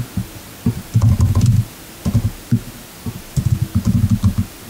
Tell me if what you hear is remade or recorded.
recorded